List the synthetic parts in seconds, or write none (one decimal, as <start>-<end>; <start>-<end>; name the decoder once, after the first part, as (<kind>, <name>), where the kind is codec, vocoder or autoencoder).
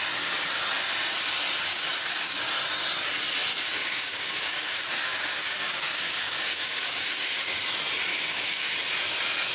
1.7-2.4 (codec, DAC); 3.5-7.6; 8.1-8.7